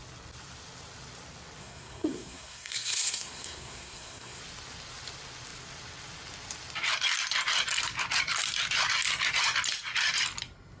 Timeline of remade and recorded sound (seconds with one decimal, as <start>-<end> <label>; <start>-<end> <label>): 0.0-1.6 recorded; 1.6-4.4 remade; 4.4-10.8 recorded